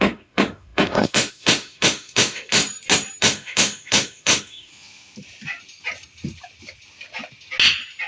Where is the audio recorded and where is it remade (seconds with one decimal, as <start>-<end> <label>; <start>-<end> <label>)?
0.0-2.6 remade; 2.6-3.2 recorded; 3.2-4.7 remade; 4.7-8.1 recorded